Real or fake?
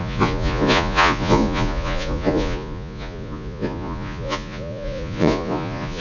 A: fake